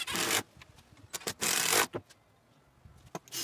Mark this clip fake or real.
real